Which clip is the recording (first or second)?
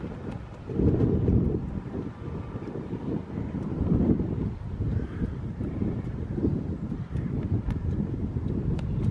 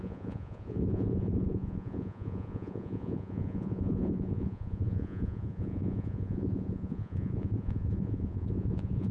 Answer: first